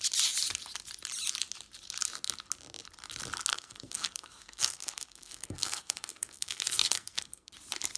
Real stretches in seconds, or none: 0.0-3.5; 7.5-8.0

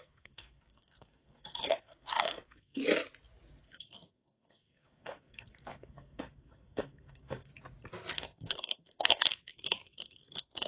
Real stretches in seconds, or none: 2.8-3.6; 7.5-8.1

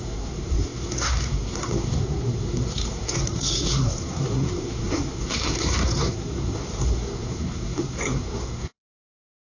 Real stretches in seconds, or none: none

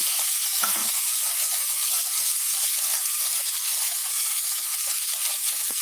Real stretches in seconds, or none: none